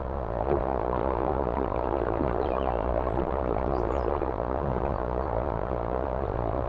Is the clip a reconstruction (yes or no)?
yes